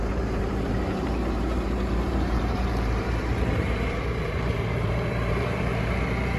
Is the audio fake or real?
fake